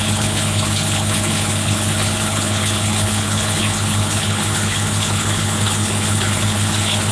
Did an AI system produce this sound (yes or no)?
yes